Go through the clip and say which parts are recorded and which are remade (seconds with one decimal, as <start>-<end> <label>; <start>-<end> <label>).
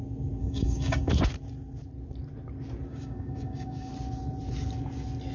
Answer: 0.0-0.4 recorded; 0.4-1.1 remade; 1.1-2.9 recorded; 2.9-3.9 remade; 3.9-5.3 recorded